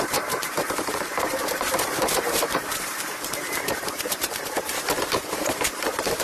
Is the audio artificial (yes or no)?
yes